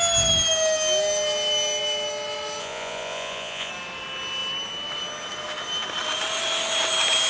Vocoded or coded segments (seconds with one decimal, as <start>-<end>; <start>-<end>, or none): 2.6-3.7